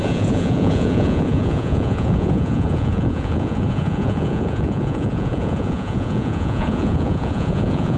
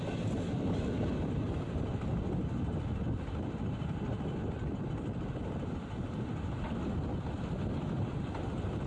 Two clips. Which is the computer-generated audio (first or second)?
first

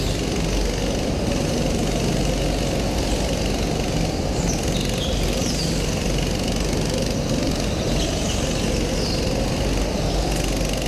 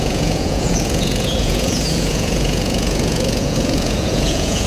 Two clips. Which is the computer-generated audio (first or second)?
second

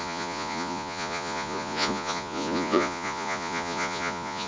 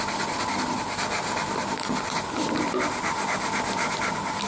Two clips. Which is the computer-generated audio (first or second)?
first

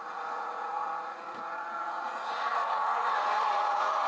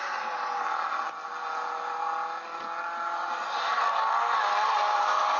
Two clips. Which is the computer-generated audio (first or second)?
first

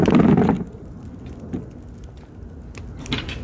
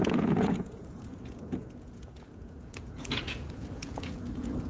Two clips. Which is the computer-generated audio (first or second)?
second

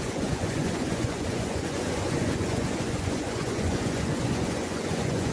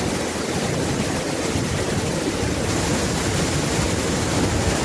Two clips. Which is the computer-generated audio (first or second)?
first